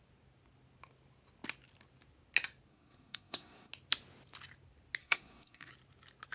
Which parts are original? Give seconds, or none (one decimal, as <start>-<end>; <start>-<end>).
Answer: 0.0-2.7; 3.7-5.0; 5.7-6.3